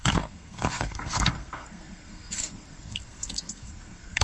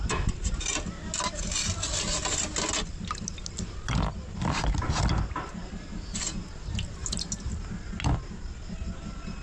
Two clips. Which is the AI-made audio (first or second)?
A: first